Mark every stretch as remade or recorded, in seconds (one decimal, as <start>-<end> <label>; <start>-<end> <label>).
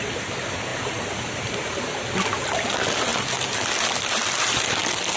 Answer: 0.0-0.7 recorded; 0.7-2.1 remade; 2.1-5.2 recorded